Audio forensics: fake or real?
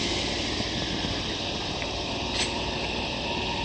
real